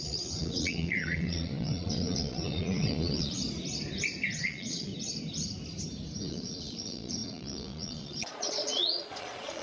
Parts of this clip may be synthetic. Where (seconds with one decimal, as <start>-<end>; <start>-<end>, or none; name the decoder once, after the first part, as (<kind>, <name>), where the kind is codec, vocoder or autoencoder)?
0.0-3.4 (vocoder, Vocos); 4.4-4.9; 6.2-9.6